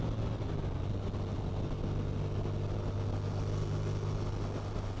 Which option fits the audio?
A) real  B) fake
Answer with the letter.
A